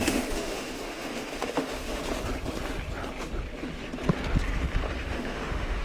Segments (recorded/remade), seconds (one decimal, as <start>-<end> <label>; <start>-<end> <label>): 0.0-2.0 remade; 2.0-4.9 recorded; 4.9-5.8 remade